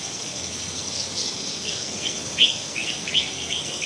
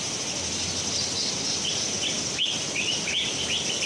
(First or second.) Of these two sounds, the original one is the second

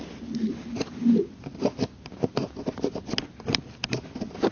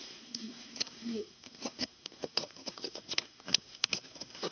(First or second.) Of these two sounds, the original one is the first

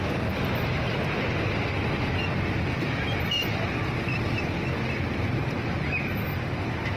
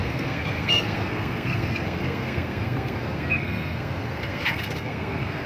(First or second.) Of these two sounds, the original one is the first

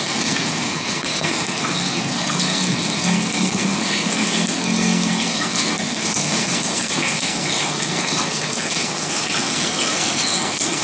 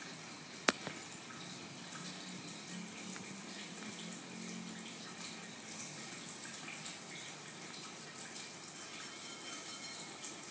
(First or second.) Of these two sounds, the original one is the second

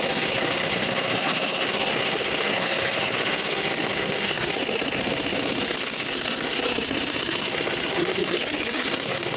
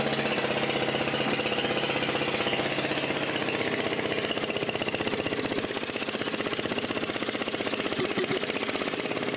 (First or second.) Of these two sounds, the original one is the second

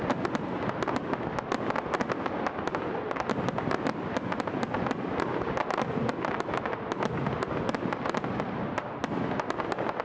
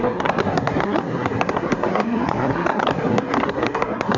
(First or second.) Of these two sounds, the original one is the first